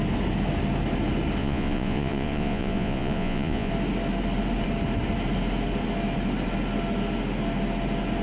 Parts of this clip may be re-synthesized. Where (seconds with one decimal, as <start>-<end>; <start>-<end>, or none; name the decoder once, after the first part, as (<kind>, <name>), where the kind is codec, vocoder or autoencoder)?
1.4-3.7 (vocoder, Vocos)